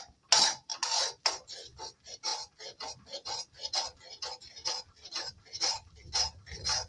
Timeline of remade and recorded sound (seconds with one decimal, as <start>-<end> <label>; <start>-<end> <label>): 0.0-6.9 recorded